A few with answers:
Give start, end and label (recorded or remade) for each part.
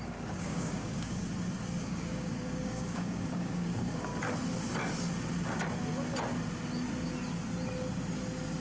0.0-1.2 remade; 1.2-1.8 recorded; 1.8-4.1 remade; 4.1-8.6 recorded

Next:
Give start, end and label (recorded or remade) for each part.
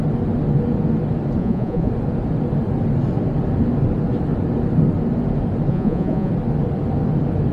0.0-1.4 recorded; 1.4-1.9 remade; 1.9-5.7 recorded; 5.7-6.3 remade; 6.3-7.5 recorded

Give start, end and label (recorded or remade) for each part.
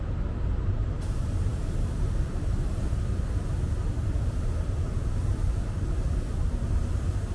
0.0-7.3 recorded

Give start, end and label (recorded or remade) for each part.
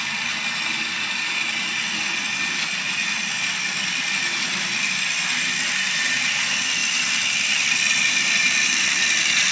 0.0-6.8 recorded; 6.8-9.5 remade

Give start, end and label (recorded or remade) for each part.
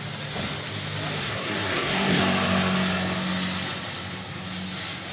0.0-1.2 recorded; 1.2-2.2 remade; 2.2-5.1 recorded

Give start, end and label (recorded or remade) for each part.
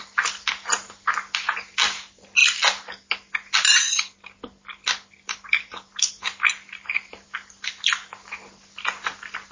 0.0-9.5 recorded